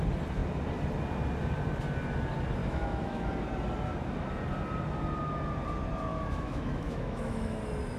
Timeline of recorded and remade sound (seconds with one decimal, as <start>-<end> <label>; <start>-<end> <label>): 0.0-2.6 recorded; 2.6-3.3 remade; 3.3-6.1 recorded; 6.1-7.6 remade; 7.6-8.0 recorded